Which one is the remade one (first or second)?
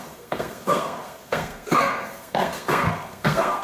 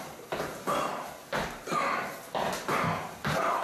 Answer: first